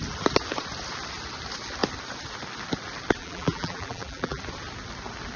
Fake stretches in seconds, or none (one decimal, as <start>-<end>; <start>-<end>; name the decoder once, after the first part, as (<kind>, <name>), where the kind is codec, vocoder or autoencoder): 3.2-4.4 (vocoder, BigVGAN v2)